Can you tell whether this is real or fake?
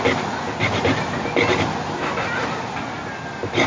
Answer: real